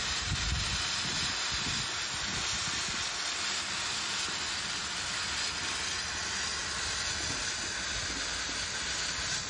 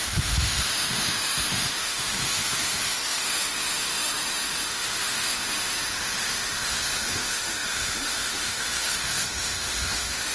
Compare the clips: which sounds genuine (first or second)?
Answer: first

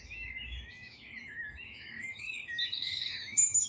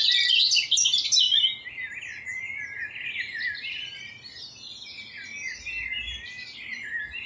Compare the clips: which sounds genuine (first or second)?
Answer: second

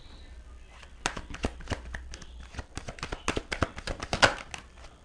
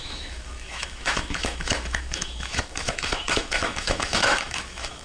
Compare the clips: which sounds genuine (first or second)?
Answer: first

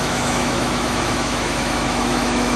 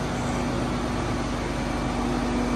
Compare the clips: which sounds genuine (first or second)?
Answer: second